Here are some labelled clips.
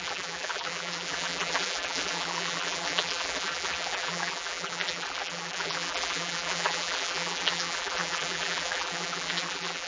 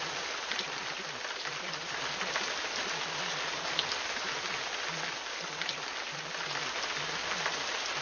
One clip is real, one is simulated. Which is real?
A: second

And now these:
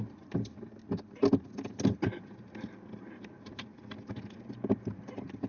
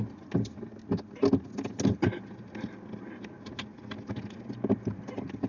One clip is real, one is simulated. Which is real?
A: second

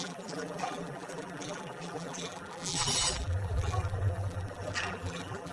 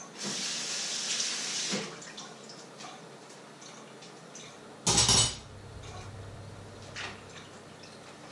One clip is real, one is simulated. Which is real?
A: second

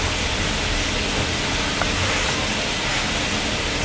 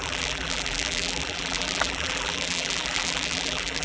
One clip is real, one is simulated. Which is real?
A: first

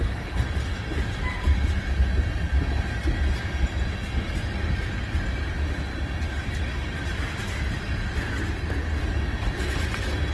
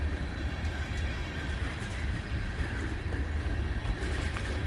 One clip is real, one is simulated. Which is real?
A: first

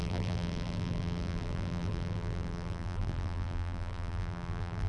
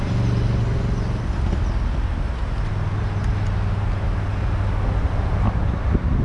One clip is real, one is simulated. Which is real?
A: second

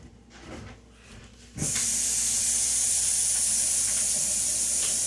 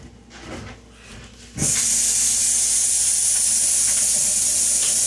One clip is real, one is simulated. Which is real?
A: second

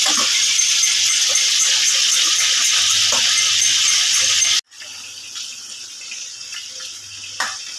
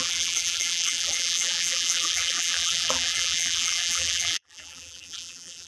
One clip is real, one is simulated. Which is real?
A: first